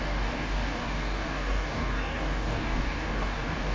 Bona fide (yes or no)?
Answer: no